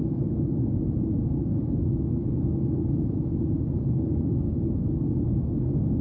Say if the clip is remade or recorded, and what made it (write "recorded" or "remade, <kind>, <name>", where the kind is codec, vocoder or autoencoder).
remade, codec, DAC